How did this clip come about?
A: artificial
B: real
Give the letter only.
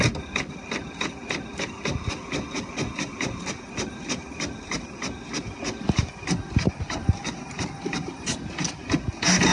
B